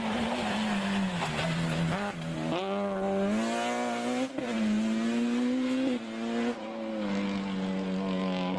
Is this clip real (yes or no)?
yes